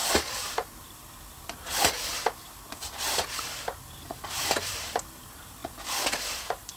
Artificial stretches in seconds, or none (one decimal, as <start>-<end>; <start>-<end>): 4.1-6.8